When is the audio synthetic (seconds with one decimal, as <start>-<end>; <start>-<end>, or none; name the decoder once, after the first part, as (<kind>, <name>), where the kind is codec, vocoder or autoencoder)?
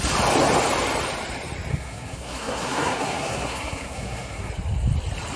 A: 1.7-4.5 (codec, SNAC)